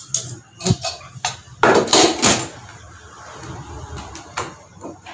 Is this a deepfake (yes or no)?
no